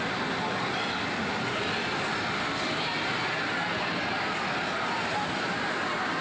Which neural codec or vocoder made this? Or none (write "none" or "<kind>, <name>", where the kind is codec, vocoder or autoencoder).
none